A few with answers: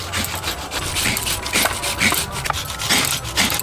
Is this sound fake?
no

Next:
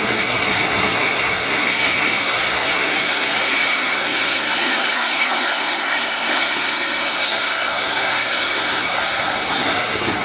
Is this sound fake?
yes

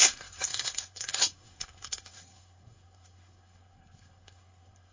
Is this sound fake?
yes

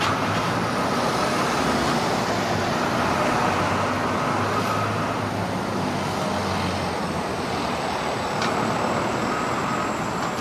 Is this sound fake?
no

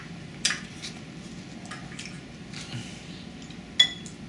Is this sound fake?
no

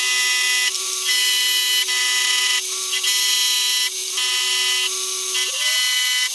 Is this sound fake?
no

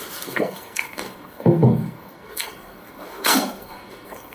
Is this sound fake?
yes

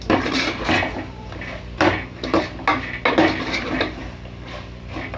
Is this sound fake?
no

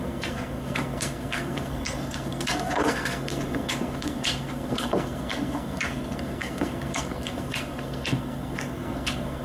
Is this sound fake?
yes